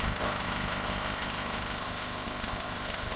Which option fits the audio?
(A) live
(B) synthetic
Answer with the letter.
B